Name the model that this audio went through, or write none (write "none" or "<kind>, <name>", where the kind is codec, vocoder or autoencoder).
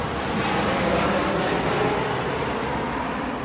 none